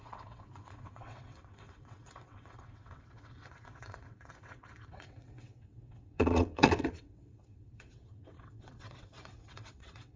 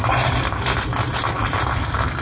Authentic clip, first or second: second